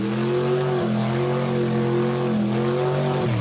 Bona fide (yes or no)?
yes